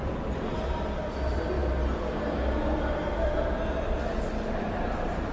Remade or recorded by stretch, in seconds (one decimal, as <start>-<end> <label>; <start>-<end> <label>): 0.0-1.6 remade; 1.6-4.4 recorded; 4.4-5.3 remade

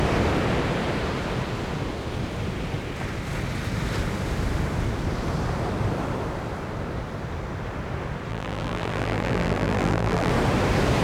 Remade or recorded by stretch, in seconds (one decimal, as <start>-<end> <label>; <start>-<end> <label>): 0.0-8.3 recorded; 8.3-10.3 remade; 10.3-11.0 recorded

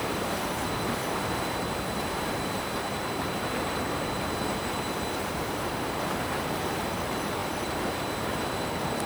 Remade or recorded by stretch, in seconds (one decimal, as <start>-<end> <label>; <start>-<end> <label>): 0.0-9.1 remade

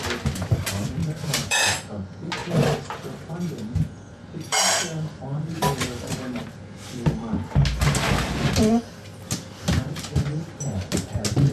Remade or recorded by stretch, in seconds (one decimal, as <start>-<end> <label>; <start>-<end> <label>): 0.0-1.0 recorded; 1.0-1.7 remade; 1.7-2.4 recorded; 2.4-6.4 remade; 6.4-11.5 recorded